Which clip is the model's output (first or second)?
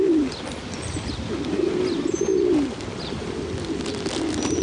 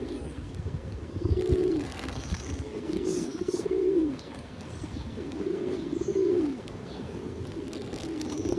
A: second